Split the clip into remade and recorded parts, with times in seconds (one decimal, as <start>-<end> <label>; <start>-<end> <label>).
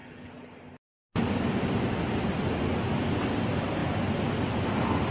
0.0-5.1 recorded